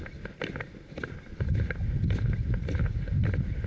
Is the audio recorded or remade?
recorded